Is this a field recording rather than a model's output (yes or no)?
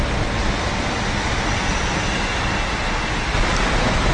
yes